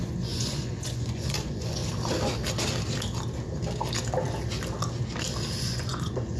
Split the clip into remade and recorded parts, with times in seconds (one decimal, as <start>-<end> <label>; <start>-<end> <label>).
0.0-1.8 remade; 1.8-5.6 recorded; 5.6-6.4 remade